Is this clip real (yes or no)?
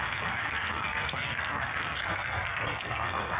no